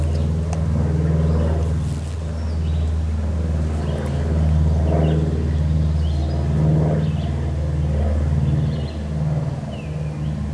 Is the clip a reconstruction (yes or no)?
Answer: no